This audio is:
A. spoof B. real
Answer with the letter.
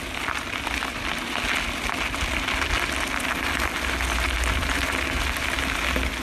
B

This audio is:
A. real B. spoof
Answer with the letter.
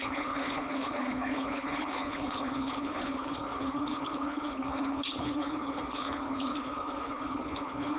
B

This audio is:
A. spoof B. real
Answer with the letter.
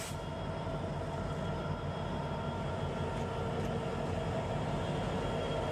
B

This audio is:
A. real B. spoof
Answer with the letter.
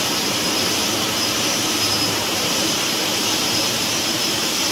B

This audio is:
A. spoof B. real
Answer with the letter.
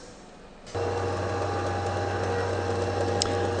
B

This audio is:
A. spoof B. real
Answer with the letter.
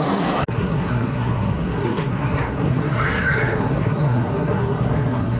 A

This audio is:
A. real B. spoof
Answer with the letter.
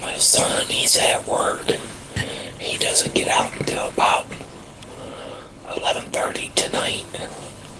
B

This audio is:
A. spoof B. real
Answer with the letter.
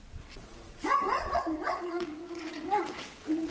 A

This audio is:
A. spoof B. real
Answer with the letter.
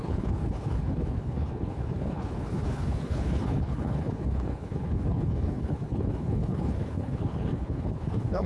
A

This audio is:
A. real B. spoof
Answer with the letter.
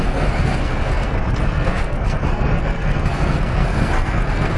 B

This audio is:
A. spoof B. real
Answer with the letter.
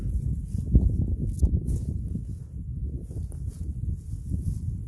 B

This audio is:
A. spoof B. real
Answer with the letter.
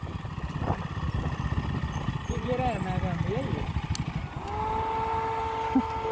B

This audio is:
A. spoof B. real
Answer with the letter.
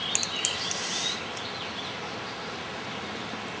B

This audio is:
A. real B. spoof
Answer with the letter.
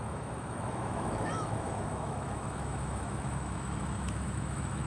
B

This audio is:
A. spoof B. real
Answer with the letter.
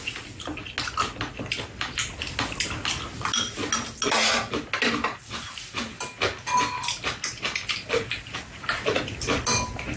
B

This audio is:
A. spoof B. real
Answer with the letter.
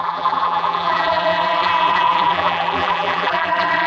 A